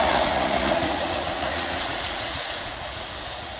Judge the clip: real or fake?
fake